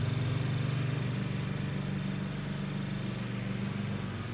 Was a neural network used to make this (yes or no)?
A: no